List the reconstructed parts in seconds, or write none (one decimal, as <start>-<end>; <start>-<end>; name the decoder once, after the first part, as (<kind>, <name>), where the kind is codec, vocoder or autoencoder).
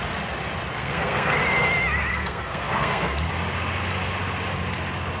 0.8-1.4 (codec, SNAC); 2.1-3.3